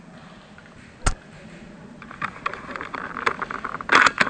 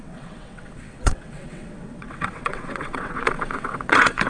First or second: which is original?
first